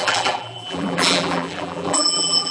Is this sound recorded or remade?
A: remade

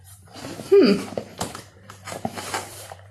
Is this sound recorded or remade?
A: remade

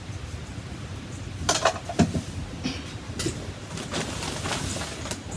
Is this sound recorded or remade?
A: recorded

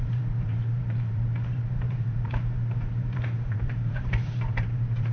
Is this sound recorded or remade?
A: remade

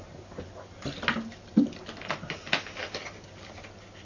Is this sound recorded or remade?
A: recorded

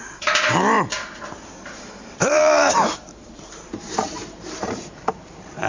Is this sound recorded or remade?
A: remade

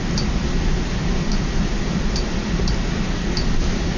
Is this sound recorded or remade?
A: recorded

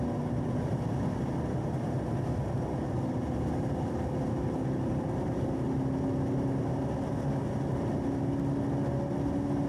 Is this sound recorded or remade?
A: recorded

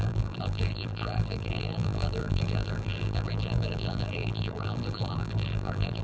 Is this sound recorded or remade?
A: remade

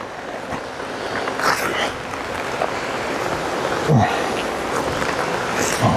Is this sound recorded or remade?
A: recorded